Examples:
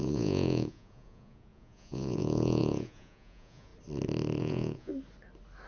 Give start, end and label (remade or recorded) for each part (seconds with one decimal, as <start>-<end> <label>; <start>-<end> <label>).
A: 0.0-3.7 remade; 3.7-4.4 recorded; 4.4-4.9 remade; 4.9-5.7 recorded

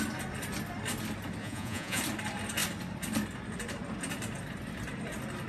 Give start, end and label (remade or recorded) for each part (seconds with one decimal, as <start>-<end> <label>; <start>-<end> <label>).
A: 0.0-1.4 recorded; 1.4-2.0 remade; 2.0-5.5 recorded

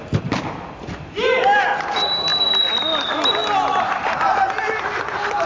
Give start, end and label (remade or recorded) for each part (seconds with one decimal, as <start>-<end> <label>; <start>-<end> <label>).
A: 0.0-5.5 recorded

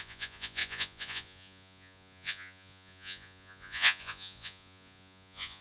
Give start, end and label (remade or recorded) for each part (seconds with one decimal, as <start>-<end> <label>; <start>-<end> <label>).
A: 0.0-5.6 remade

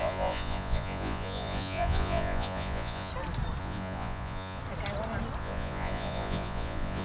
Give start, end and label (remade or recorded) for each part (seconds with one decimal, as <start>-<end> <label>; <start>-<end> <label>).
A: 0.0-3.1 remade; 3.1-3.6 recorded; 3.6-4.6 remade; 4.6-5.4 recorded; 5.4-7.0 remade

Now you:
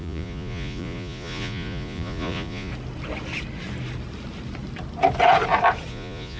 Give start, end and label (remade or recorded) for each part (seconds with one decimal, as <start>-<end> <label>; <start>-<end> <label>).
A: 0.0-2.7 remade; 2.7-5.9 recorded; 5.9-6.4 remade

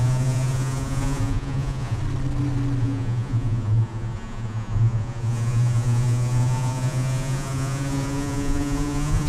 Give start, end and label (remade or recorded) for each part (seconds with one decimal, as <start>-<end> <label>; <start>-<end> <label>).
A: 0.0-2.0 remade; 2.0-2.8 recorded; 2.8-9.3 remade